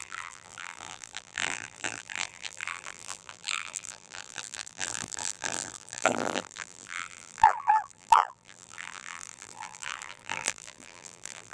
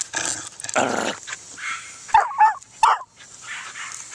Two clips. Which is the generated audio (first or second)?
first